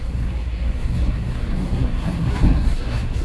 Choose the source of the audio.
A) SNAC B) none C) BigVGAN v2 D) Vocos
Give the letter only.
A